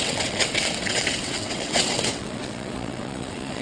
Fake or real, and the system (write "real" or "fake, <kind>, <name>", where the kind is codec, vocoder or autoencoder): fake, vocoder, WaveNeXt